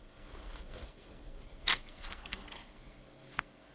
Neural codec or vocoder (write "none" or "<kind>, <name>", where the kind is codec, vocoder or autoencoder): codec, SNAC